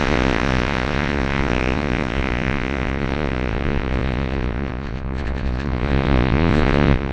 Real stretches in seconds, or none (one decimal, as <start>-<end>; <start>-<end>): none